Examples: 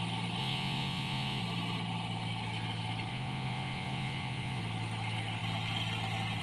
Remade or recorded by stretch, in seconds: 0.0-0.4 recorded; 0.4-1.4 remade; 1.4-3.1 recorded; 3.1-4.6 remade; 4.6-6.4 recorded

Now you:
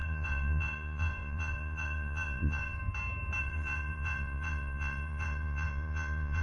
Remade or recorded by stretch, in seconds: 0.0-2.8 remade; 2.8-3.4 recorded; 3.4-6.4 remade

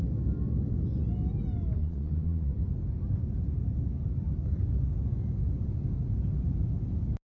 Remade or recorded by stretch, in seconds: 0.0-1.8 recorded; 1.8-2.5 remade; 2.5-7.3 recorded